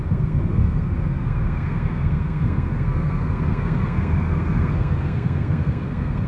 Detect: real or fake fake